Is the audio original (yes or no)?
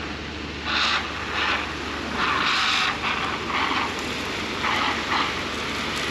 yes